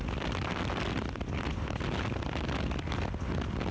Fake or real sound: real